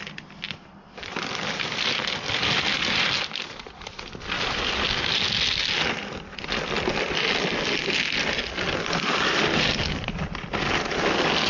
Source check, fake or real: real